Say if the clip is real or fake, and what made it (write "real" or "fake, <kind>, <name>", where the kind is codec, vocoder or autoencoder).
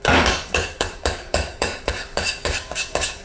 fake, codec, DAC